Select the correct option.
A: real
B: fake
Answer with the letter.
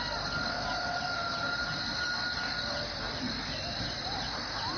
A